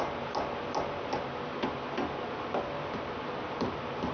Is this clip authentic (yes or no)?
yes